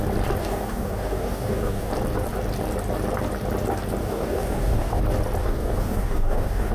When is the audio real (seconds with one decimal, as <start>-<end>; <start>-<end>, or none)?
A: 0.0-0.4; 1.9-4.0; 5.0-5.4